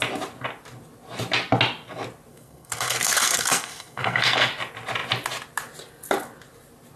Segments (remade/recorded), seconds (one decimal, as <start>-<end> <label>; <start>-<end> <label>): 0.0-2.3 recorded; 2.3-4.5 remade; 4.5-7.0 recorded